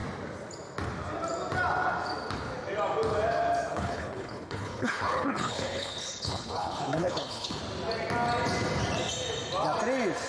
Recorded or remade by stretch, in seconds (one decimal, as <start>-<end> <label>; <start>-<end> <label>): 0.0-3.7 recorded; 3.7-7.6 remade; 7.6-10.3 recorded